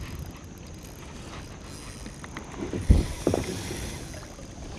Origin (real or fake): real